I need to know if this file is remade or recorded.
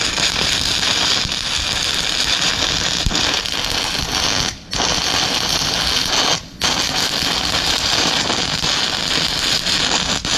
recorded